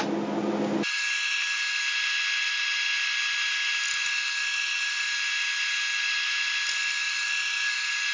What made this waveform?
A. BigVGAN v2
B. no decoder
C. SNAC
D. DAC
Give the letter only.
B